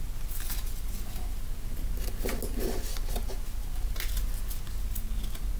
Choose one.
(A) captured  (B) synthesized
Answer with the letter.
A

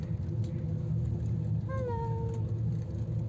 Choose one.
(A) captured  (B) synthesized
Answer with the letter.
A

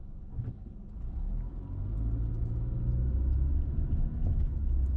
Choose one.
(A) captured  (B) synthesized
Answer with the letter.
A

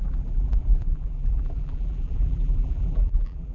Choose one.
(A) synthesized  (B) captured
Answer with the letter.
A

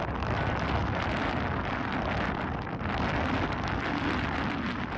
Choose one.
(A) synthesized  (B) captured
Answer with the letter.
B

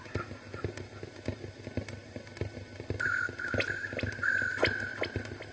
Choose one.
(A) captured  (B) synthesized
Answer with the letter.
A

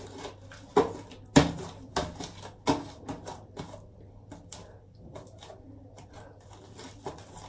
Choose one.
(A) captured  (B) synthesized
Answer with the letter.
A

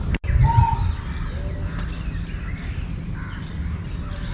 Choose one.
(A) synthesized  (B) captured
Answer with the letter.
B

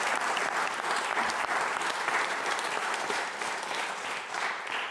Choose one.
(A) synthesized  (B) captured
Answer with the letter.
A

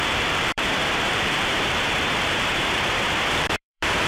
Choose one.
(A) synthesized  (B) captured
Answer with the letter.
A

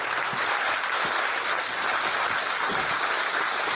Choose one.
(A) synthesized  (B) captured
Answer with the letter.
B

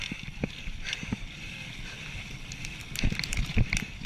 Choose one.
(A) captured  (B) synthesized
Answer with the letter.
A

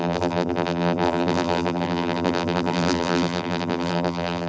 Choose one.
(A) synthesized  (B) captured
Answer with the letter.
A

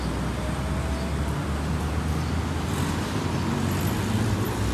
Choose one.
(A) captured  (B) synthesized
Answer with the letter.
A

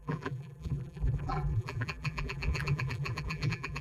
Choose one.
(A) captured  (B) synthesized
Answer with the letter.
B